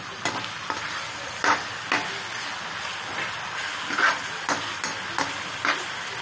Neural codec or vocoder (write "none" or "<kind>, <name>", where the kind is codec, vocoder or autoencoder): none